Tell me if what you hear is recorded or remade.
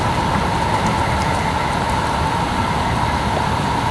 recorded